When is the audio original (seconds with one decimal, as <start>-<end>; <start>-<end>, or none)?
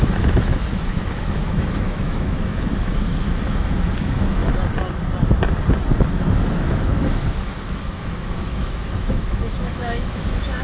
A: 4.4-6.5